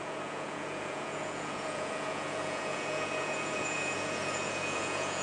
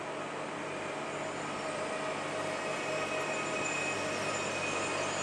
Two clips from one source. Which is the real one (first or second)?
second